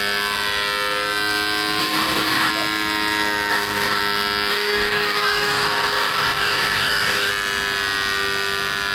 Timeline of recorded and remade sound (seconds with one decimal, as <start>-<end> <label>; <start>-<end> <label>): 0.0-1.8 recorded; 1.8-2.5 remade; 2.5-3.5 recorded; 3.5-4.0 remade; 4.0-4.5 recorded; 4.5-7.3 remade; 7.3-8.9 recorded